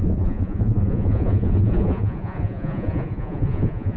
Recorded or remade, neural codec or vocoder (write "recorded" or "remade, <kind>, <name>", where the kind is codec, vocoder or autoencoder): remade, vocoder, Vocos